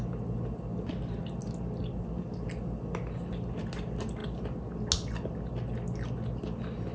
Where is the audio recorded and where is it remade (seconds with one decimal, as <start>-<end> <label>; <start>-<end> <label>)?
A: 0.0-6.9 recorded